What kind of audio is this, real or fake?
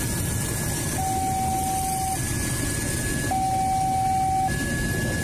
real